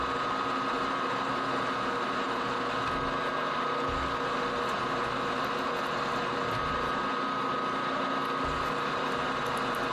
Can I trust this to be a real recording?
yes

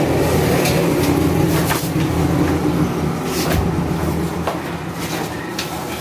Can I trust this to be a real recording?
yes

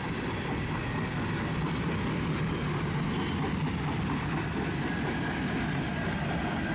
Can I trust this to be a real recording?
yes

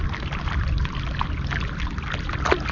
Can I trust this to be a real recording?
yes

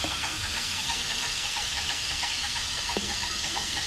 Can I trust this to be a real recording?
no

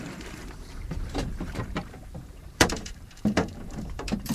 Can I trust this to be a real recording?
no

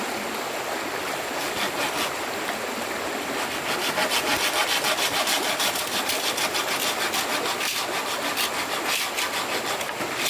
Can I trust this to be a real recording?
yes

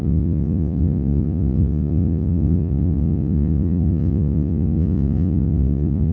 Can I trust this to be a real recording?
no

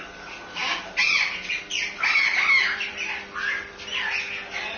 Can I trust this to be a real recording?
yes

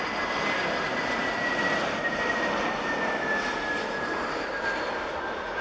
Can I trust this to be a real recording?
yes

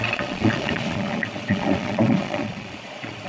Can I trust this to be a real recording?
no